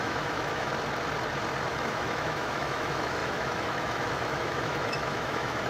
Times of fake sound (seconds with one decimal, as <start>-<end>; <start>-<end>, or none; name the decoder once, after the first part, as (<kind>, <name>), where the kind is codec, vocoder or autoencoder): 0.0-0.7 (autoencoder, DAC-VAE); 1.7-5.7